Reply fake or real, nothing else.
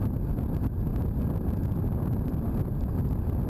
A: real